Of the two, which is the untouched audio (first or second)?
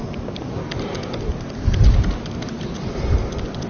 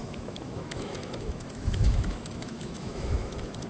first